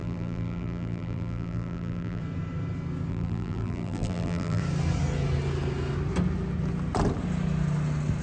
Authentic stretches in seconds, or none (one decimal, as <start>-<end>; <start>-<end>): 2.2-3.1; 4.6-8.2